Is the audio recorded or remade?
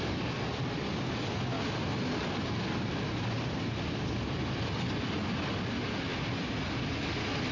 recorded